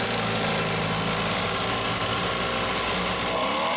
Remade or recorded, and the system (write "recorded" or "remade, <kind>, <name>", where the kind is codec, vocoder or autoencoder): recorded